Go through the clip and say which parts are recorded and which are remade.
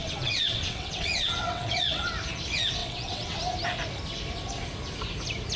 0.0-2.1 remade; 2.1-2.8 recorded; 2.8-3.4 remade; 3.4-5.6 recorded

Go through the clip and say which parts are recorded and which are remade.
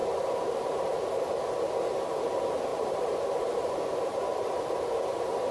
0.0-0.7 remade; 0.7-2.7 recorded; 2.7-4.2 remade; 4.2-5.5 recorded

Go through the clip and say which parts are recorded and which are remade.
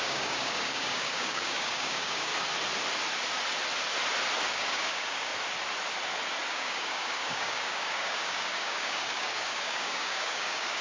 0.0-2.3 remade; 2.3-4.5 recorded; 4.5-5.3 remade; 5.3-6.5 recorded; 6.5-10.8 remade